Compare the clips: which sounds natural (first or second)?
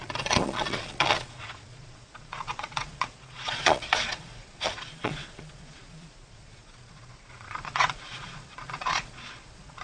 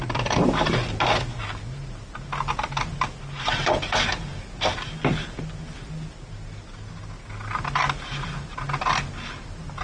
second